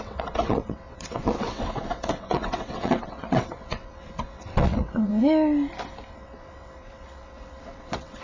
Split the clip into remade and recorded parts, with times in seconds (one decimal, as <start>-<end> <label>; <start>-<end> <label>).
0.0-5.1 remade; 5.1-6.1 recorded; 6.1-8.2 remade